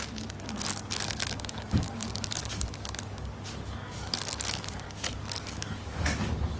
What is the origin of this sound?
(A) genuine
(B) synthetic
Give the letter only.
B